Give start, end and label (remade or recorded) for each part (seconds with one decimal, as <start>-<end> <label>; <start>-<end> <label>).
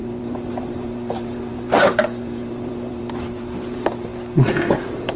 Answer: 0.0-4.1 remade; 4.1-4.8 recorded; 4.8-5.2 remade